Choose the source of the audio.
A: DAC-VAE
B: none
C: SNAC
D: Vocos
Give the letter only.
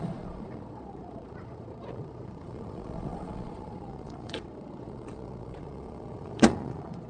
D